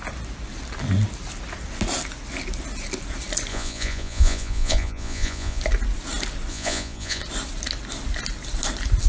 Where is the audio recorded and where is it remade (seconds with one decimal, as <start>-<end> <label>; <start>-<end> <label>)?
0.0-3.5 recorded; 3.5-5.6 remade; 5.6-6.5 recorded; 6.5-7.2 remade; 7.2-9.1 recorded